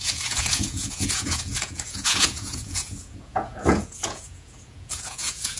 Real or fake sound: fake